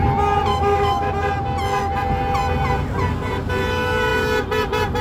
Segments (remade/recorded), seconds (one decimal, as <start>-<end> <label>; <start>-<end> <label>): 0.0-0.5 recorded; 0.5-1.1 remade; 1.1-5.0 recorded